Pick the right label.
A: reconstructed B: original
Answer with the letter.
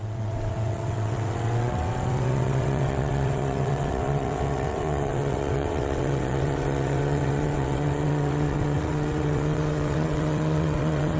A